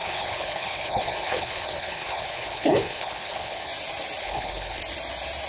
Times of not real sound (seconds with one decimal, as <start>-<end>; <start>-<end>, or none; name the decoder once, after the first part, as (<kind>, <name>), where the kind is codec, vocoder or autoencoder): 0.0-3.7 (codec, HILCodec); 4.2-4.8